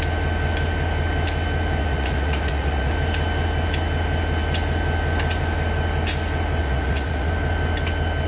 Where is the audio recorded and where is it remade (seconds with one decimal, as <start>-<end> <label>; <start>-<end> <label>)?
0.0-1.8 recorded; 1.8-2.9 remade; 2.9-6.6 recorded; 6.6-7.3 remade; 7.3-8.3 recorded